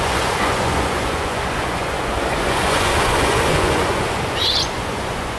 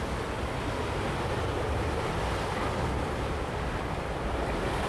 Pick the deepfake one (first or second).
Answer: first